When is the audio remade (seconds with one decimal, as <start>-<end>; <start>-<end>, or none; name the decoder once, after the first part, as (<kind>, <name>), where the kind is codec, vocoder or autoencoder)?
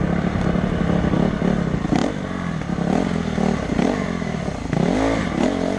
2.0-5.8 (vocoder, BigVGAN v2)